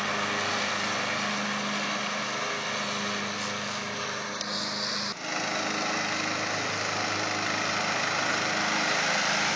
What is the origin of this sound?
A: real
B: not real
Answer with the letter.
A